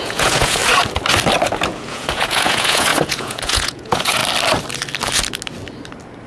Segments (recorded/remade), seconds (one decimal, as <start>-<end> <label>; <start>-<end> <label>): 0.0-0.6 remade; 0.6-1.7 recorded; 1.7-4.2 remade; 4.2-6.3 recorded